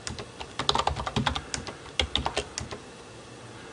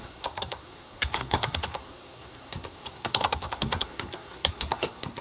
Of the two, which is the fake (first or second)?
second